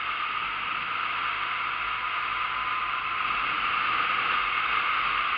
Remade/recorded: recorded